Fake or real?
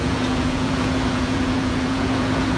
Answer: fake